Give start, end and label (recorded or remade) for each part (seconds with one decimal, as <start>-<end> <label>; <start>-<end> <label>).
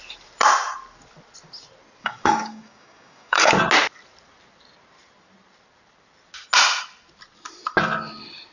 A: 0.0-2.0 recorded; 2.0-3.5 remade; 3.5-8.5 recorded